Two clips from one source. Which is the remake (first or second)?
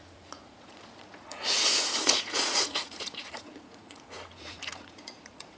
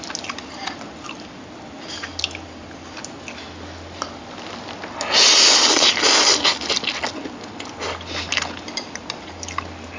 first